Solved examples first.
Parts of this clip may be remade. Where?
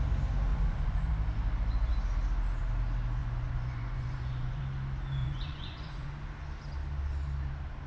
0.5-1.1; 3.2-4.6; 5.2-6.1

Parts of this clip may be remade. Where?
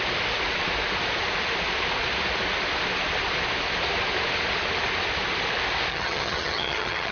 5.9-7.1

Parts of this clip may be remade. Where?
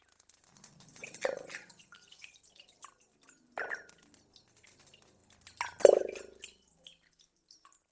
0.5-2.4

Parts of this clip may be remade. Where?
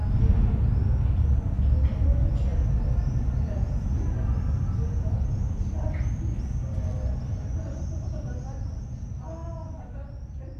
none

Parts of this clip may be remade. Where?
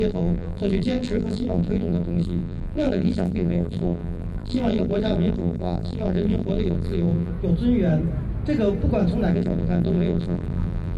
0.0-7.3; 9.3-11.0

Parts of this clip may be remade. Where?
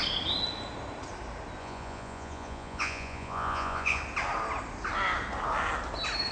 1.6-4.0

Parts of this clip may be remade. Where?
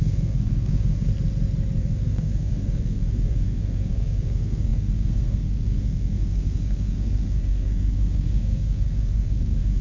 0.0-1.1; 1.8-9.8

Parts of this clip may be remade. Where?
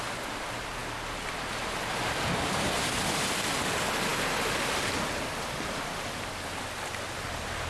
none